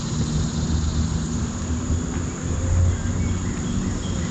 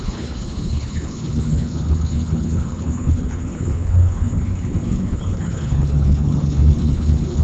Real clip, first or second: first